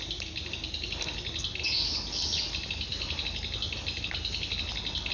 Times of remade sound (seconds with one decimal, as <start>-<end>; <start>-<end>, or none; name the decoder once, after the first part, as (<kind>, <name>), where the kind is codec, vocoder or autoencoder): none